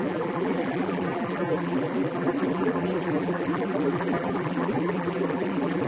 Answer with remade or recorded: remade